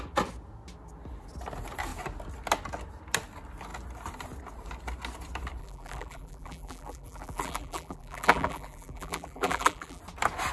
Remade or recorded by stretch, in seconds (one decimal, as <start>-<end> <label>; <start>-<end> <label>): 0.0-5.6 recorded; 5.6-10.0 remade; 10.0-10.5 recorded